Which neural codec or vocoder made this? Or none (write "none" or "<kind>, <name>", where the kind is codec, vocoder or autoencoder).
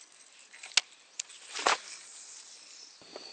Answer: none